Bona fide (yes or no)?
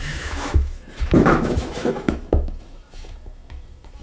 no